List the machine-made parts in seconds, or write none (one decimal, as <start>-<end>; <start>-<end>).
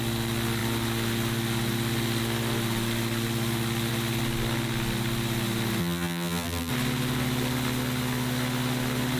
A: 5.8-6.7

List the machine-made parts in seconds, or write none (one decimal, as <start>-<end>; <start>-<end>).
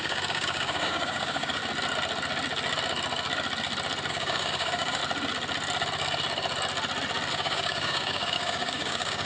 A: 0.0-1.6; 4.1-5.0; 7.3-9.3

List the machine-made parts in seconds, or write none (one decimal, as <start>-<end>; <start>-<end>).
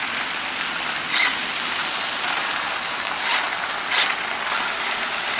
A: none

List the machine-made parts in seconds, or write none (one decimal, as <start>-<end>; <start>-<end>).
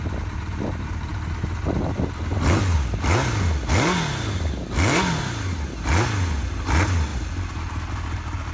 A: none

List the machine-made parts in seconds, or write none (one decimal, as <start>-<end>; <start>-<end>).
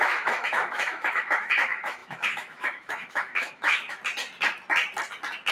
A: 0.0-4.0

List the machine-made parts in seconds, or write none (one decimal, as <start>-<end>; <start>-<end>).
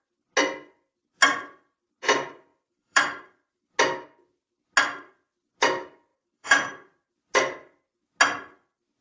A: 2.5-3.7; 6.1-7.1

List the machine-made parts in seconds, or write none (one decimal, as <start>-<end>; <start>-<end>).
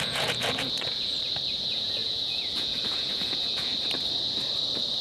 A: 0.0-1.1; 1.6-3.7